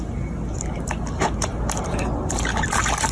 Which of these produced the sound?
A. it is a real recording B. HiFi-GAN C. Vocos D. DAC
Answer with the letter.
A